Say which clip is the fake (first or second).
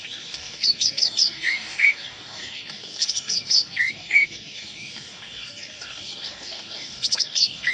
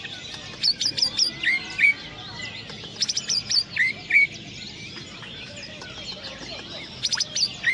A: first